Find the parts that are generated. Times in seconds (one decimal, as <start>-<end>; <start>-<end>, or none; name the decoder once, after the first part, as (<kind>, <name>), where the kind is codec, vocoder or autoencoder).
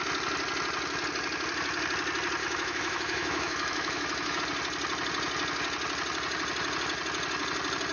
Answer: 2.4-4.4 (autoencoder, DAC-VAE)